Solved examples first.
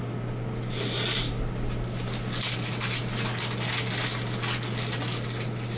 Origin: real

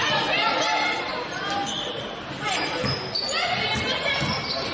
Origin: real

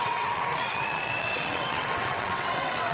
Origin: fake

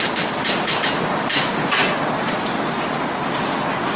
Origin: real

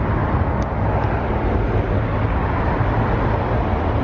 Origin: real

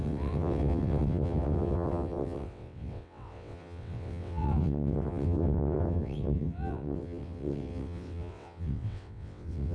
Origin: fake